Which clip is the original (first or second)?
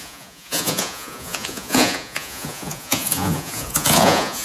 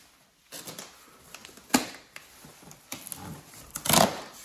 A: second